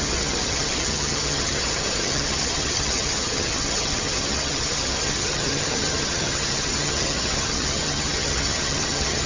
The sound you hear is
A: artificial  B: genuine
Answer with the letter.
A